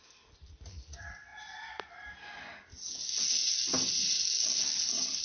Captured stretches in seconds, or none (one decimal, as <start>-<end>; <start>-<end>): 0.0-5.2